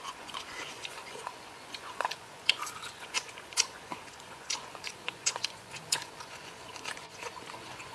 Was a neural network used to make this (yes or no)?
yes